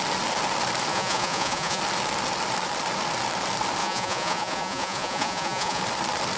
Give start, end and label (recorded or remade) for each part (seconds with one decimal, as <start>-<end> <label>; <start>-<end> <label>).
0.0-0.9 recorded; 0.9-1.8 remade; 1.8-3.8 recorded; 3.8-5.8 remade; 5.8-6.4 recorded